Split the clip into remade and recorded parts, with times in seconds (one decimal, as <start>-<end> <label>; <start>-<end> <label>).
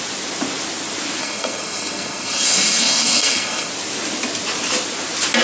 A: 0.0-1.2 recorded; 1.2-3.7 remade; 3.7-5.4 recorded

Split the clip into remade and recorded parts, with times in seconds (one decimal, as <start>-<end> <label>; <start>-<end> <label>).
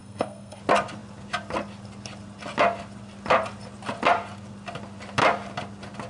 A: 0.0-0.6 remade; 0.6-6.1 recorded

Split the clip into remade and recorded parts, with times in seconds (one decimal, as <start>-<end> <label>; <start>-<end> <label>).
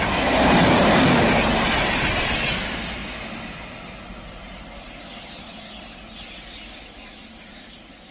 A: 0.0-8.1 recorded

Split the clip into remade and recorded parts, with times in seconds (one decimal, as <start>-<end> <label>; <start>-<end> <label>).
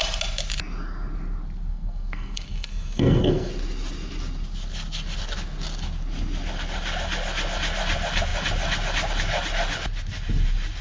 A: 0.0-1.7 recorded; 1.7-3.5 remade; 3.5-10.8 recorded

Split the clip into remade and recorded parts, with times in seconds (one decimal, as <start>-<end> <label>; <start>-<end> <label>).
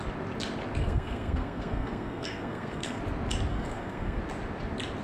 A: 0.0-0.8 recorded; 0.8-3.0 remade; 3.0-3.5 recorded; 3.5-4.2 remade; 4.2-5.0 recorded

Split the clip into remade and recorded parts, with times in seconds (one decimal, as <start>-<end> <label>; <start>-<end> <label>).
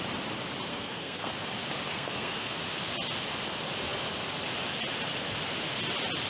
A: 0.0-0.7 recorded; 0.7-1.3 remade; 1.3-1.9 recorded; 1.9-2.6 remade; 2.6-6.3 recorded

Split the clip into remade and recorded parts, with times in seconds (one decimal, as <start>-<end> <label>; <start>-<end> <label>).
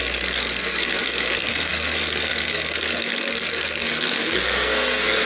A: 0.0-5.3 remade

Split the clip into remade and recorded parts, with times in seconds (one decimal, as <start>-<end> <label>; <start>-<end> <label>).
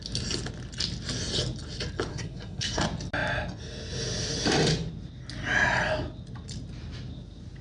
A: 0.0-2.1 recorded; 2.1-2.8 remade; 2.8-7.6 recorded